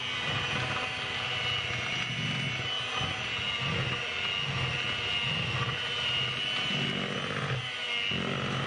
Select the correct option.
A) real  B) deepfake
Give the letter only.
A